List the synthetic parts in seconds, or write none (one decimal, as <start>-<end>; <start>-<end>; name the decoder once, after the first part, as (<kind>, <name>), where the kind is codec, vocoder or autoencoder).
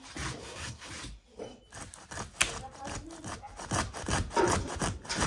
0.4-0.9 (codec, SNAC)